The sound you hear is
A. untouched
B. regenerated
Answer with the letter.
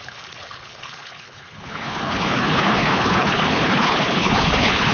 B